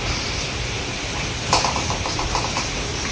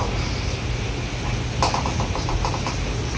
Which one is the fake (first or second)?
first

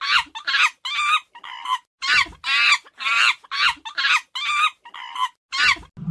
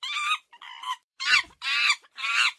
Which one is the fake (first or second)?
second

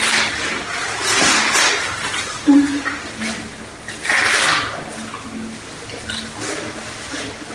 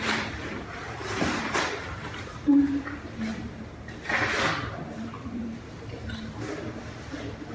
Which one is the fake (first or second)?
second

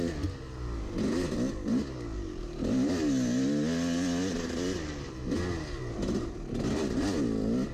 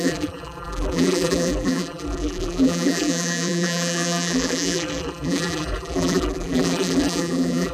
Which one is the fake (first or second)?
second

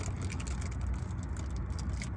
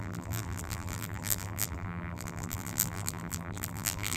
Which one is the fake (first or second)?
second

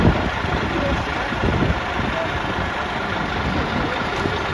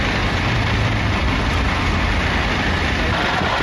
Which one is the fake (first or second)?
second